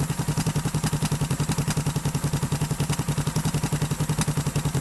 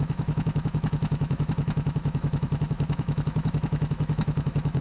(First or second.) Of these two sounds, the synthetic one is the second